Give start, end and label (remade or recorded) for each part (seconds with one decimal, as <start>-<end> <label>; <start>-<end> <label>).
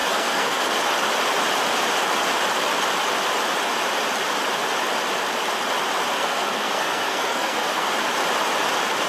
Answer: 0.0-0.7 remade; 0.7-6.2 recorded; 6.2-7.9 remade; 7.9-9.1 recorded